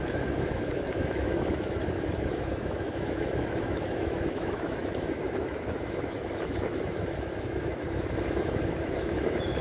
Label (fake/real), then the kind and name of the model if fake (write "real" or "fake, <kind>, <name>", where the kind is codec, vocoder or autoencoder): fake, autoencoder, DAC-VAE